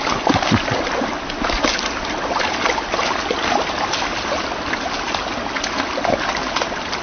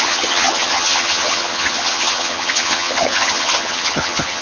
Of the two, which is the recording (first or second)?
first